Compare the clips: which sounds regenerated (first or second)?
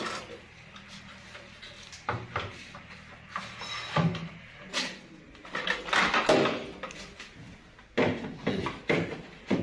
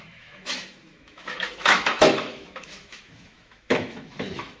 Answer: second